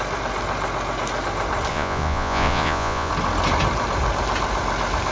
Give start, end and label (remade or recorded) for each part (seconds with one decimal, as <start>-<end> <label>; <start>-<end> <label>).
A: 0.0-1.7 recorded; 1.7-3.1 remade; 3.1-5.1 recorded